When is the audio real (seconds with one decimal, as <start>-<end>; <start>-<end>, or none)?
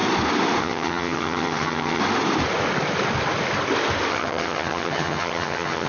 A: 0.0-0.6; 2.0-4.1